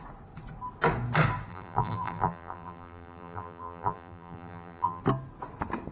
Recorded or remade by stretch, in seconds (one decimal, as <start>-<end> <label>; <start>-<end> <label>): 0.0-1.5 recorded; 1.5-5.0 remade; 5.0-5.9 recorded

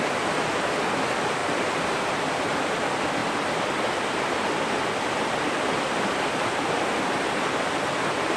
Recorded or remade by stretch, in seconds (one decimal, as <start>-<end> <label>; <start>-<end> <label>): 0.0-8.4 recorded